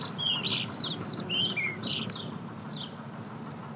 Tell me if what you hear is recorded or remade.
recorded